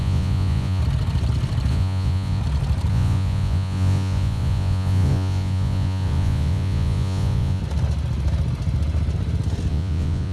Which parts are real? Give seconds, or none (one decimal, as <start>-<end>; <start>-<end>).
0.8-1.7; 2.4-2.9; 7.6-9.7